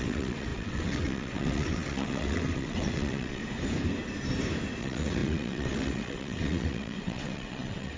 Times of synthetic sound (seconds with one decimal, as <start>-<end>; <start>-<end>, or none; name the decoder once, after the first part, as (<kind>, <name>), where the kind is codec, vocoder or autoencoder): 0.0-3.4 (vocoder, WaveNeXt); 4.8-8.0